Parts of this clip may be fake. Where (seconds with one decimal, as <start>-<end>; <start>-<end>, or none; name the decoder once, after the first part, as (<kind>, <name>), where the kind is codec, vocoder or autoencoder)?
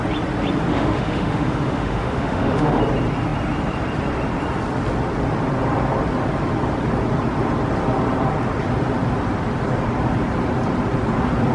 0.7-2.8 (autoencoder, DAC-VAE)